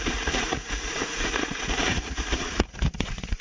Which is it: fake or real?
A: fake